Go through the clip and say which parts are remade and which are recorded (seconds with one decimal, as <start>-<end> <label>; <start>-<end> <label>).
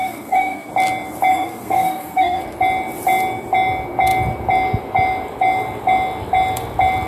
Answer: 0.0-0.7 remade; 0.7-1.3 recorded; 1.3-2.4 remade; 2.4-7.1 recorded